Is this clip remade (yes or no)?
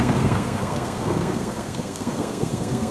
yes